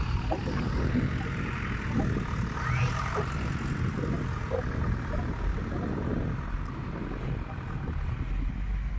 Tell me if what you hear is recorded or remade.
recorded